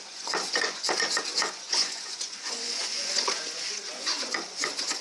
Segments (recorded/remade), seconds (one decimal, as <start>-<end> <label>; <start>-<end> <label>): 0.0-5.0 remade

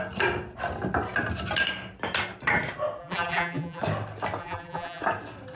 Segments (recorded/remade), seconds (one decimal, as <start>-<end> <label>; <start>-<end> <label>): 0.0-3.0 recorded; 3.0-3.8 remade; 3.8-4.4 recorded; 4.4-5.0 remade; 5.0-5.6 recorded

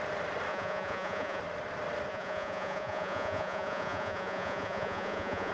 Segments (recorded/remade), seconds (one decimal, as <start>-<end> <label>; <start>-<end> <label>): 0.0-0.5 recorded; 0.5-1.4 remade; 1.4-2.1 recorded; 2.1-5.5 remade

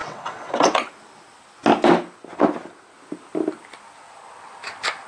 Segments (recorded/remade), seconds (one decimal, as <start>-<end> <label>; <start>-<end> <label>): 0.0-0.9 remade; 0.9-5.1 recorded

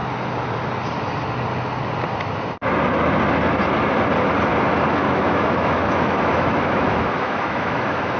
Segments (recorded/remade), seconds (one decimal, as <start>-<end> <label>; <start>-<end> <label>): 0.0-4.9 recorded; 4.9-8.2 remade

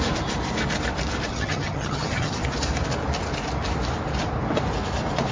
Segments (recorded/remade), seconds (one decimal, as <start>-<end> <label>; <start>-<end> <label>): 0.0-1.3 recorded; 1.3-2.4 remade; 2.4-5.3 recorded

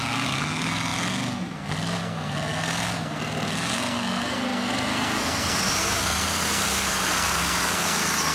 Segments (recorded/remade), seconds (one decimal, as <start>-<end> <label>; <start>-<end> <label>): 0.0-8.3 remade

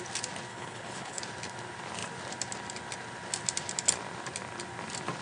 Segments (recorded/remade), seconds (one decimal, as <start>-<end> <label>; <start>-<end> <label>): 0.0-0.5 recorded; 0.5-1.2 remade; 1.2-5.2 recorded